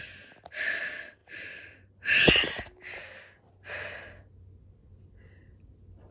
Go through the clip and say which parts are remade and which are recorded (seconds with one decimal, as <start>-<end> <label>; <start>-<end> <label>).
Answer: 0.0-6.1 recorded